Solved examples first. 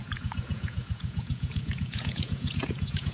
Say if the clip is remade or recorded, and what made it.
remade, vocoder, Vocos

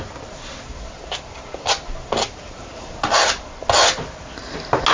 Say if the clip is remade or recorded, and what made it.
recorded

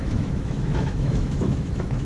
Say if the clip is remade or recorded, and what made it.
remade, autoencoder, DAC-VAE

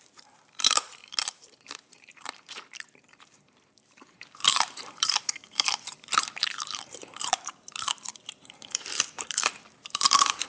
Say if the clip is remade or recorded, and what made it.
remade, vocoder, BigVGAN v2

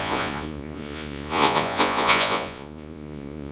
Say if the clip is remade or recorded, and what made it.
remade, vocoder, Vocos